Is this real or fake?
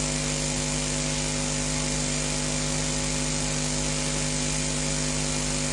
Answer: real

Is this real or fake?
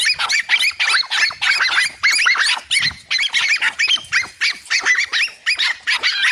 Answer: real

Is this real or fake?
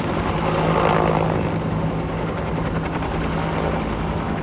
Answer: real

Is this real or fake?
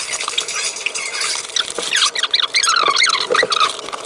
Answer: real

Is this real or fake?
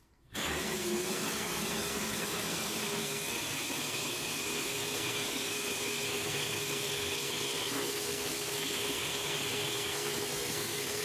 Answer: fake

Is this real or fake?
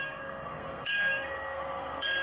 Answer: fake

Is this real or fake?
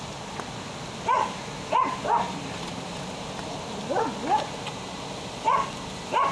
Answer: real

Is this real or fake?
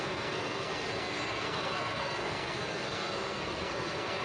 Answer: fake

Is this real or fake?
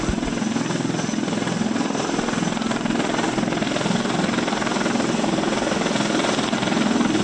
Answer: real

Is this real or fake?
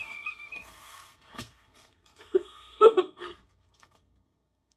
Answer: fake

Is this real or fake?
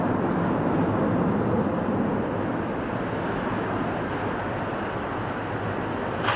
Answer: real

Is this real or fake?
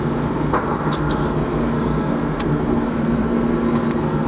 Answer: fake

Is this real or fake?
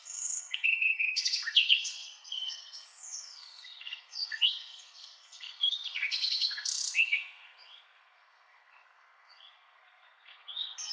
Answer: fake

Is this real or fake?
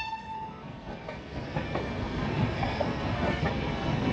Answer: fake